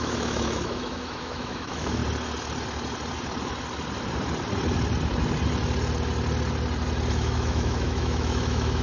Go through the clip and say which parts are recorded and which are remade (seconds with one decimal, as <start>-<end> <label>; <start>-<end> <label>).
0.0-2.0 remade; 2.0-7.1 recorded; 7.1-8.8 remade